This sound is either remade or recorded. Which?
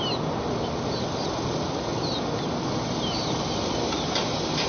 recorded